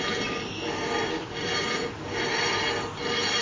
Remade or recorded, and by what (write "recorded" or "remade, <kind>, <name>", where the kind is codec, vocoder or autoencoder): recorded